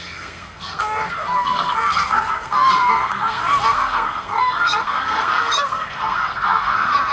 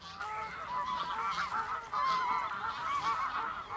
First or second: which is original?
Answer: second